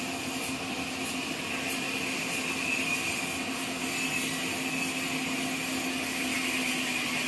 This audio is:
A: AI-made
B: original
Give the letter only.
B